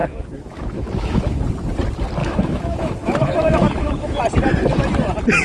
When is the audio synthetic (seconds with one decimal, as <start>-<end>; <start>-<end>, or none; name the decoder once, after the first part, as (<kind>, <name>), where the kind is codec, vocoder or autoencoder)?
0.0-1.4 (autoencoder, DAC-VAE); 2.2-4.2

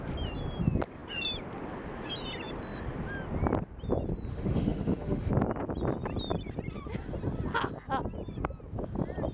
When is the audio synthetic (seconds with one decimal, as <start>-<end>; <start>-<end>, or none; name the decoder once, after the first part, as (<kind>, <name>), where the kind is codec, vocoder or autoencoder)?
4.3-5.3 (autoencoder, DAC-VAE)

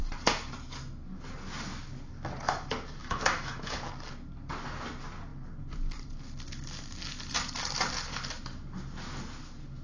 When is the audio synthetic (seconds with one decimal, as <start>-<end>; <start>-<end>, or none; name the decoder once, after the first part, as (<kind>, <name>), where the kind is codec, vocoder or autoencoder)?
3.0-3.9 (autoencoder, DAC-VAE)

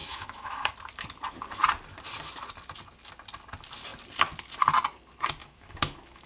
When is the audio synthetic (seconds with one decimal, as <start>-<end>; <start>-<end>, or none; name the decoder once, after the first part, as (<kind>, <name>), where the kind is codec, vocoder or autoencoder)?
0.0-0.7 (autoencoder, DAC-VAE); 5.4-6.3

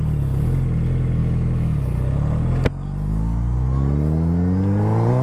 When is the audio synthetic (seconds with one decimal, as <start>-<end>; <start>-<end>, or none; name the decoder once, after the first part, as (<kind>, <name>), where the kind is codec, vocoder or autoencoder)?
none

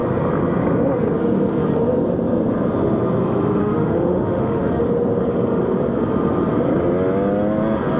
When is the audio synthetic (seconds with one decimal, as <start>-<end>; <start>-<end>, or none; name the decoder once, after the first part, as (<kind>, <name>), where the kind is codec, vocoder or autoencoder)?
3.6-4.8 (autoencoder, DAC-VAE)

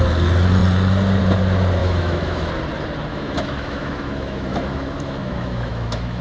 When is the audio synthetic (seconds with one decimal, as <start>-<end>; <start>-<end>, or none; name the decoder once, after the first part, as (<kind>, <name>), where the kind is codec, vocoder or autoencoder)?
1.8-2.5 (autoencoder, DAC-VAE); 3.1-6.2

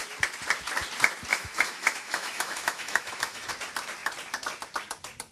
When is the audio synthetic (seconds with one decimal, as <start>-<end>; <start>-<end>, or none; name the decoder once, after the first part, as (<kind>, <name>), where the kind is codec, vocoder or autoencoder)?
1.3-3.5 (autoencoder, DAC-VAE)